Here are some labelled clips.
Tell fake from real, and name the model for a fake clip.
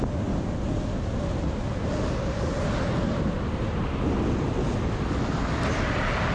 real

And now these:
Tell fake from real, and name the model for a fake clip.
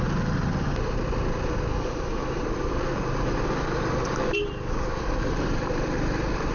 real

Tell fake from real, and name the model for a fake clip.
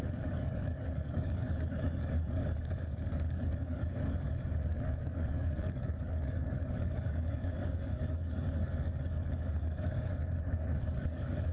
fake, codec, DAC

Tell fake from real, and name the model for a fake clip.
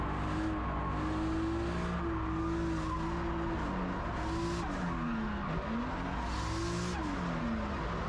real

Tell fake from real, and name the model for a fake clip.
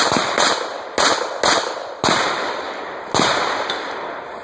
real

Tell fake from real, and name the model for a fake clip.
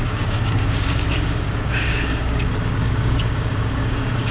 fake, codec, DAC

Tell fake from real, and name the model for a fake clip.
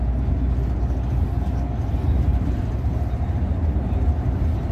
real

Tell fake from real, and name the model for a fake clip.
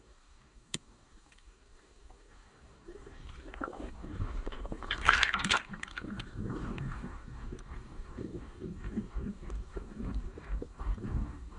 fake, codec, DAC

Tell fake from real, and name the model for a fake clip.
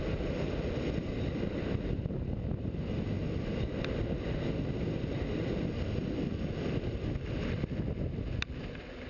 real